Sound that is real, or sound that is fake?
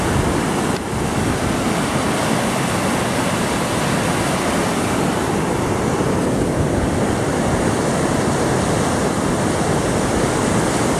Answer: real